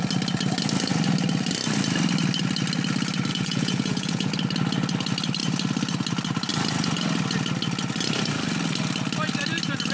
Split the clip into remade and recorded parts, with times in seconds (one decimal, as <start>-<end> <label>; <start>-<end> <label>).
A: 0.0-3.3 recorded; 3.3-4.3 remade; 4.3-9.9 recorded